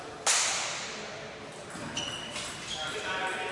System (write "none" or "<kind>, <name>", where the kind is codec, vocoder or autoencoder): none